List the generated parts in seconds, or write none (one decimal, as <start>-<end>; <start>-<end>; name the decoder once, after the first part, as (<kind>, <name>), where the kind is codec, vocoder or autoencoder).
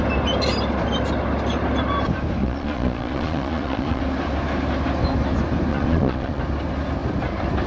2.4-4.0 (vocoder, Vocos); 5.7-6.4